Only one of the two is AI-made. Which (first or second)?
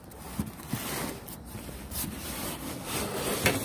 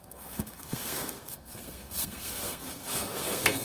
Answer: second